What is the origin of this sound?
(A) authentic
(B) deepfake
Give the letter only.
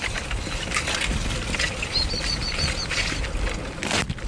A